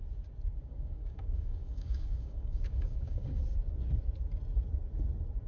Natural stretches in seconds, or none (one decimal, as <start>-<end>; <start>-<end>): 0.0-0.6; 3.4-5.5